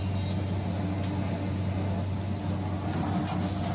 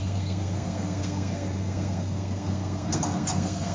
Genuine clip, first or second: first